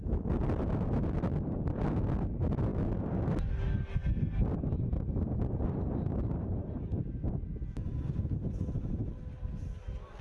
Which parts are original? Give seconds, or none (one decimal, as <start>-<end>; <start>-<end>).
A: 0.0-10.2